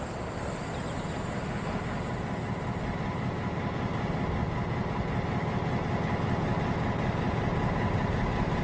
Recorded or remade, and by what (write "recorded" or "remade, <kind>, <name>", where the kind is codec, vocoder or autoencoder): recorded